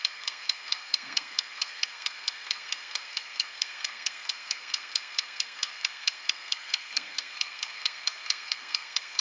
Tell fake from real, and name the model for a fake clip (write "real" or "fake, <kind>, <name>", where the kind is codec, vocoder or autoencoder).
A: fake, codec, SNAC